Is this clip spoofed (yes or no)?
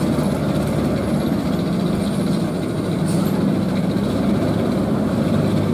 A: no